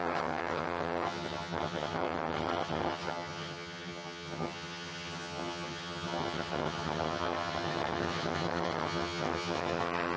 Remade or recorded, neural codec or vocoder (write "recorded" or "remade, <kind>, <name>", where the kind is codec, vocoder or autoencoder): remade, vocoder, HiFi-GAN